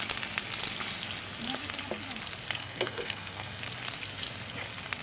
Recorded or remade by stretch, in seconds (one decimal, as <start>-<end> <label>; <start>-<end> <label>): 0.0-2.6 recorded; 2.6-3.6 remade; 3.6-5.0 recorded